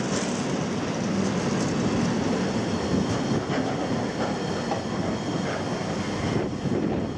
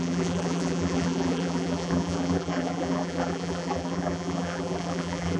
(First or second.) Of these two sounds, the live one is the first